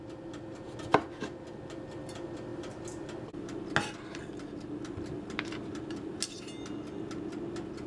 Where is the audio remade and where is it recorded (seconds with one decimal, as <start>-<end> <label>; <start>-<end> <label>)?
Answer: 0.0-7.9 recorded